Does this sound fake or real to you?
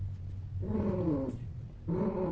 real